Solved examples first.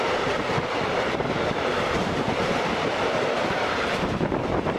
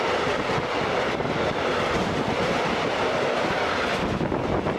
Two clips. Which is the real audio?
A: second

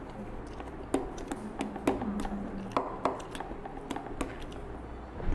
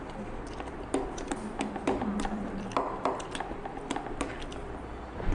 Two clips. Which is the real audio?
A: first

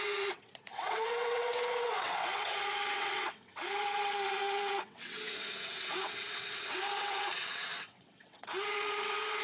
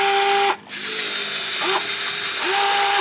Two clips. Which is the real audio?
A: second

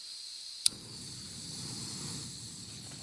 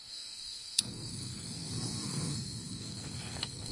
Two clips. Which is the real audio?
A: first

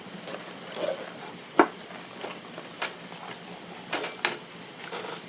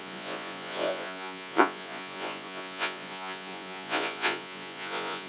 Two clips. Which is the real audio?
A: first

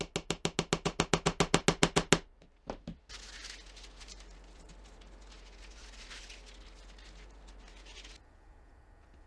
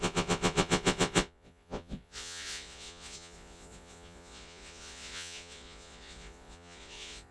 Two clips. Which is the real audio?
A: first